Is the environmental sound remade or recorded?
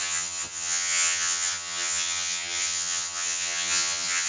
remade